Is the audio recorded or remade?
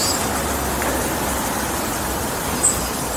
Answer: recorded